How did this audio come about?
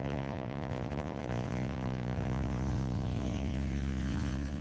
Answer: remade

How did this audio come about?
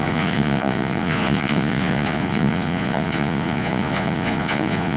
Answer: remade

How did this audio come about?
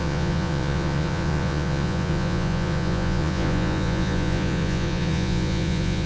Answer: remade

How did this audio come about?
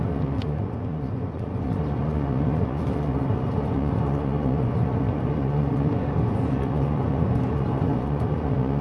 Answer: remade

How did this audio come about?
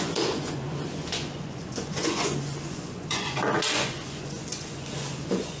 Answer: remade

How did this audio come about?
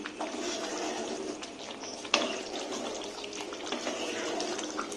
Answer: recorded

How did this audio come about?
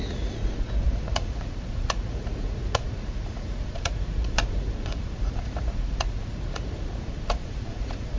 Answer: remade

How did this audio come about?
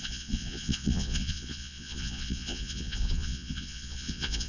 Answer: remade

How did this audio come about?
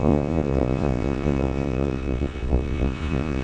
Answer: remade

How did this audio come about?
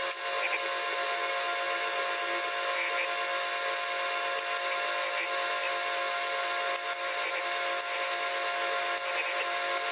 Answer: recorded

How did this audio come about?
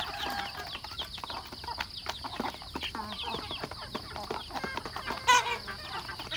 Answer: recorded